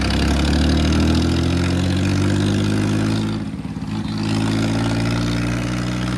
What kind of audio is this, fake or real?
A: real